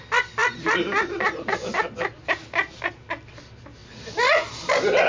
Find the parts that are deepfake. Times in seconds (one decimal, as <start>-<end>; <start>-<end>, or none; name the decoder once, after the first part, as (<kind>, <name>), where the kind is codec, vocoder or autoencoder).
none